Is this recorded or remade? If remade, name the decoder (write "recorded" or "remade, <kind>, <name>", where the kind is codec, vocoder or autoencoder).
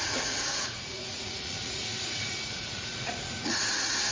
remade, vocoder, Vocos